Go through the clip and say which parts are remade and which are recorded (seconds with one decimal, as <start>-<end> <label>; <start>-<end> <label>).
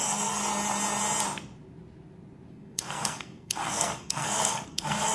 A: 0.0-0.4 remade; 0.4-2.5 recorded; 2.5-5.1 remade